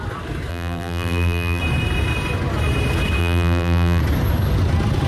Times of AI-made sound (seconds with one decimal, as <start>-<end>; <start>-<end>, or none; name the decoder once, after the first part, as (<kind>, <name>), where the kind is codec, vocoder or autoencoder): 0.5-1.6 (vocoder, BigVGAN v2); 3.2-4.0